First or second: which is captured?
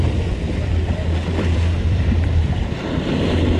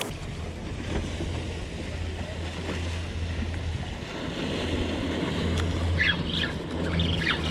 second